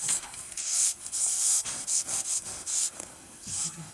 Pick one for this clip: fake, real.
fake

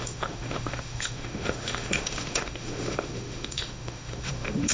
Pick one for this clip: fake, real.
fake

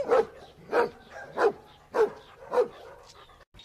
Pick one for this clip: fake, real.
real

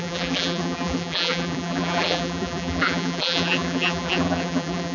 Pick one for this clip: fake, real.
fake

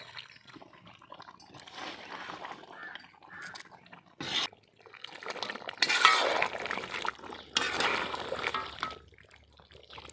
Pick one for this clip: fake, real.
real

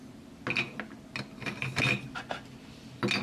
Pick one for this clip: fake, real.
real